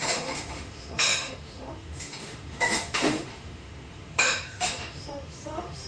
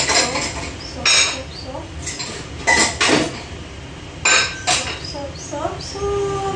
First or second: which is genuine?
second